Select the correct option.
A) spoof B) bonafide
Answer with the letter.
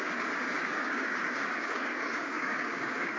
A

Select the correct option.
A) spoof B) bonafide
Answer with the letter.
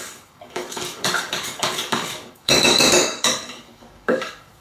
A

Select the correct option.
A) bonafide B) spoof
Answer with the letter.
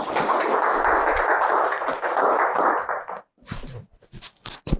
A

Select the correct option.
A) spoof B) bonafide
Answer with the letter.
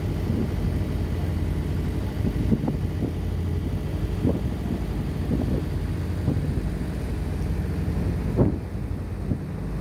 B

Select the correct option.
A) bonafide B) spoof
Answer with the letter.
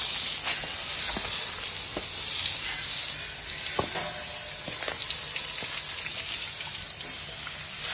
A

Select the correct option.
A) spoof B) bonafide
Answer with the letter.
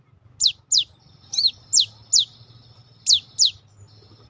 B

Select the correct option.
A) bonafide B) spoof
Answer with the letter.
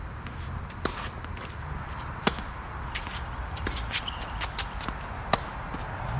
A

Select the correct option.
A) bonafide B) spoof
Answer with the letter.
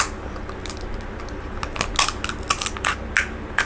A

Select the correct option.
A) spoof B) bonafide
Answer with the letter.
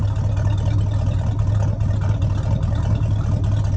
B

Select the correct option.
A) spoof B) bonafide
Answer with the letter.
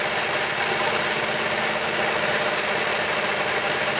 B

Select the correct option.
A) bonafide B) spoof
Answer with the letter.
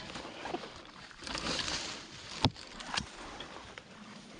A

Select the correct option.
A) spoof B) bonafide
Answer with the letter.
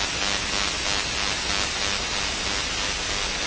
B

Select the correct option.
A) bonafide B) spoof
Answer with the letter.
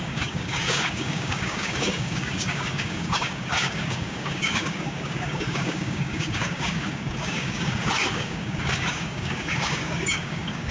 B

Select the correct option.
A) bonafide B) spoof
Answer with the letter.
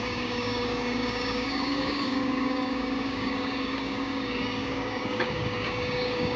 B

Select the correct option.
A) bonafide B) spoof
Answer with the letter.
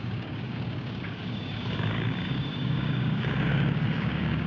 B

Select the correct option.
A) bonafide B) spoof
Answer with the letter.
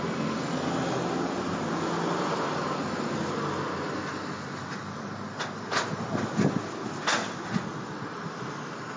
A